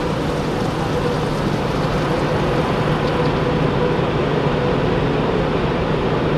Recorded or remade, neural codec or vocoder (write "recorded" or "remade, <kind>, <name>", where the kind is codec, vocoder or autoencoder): recorded